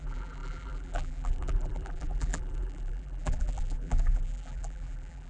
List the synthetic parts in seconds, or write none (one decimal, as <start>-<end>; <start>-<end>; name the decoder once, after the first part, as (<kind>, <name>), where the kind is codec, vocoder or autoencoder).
0.0-5.3 (vocoder, BigVGAN v2)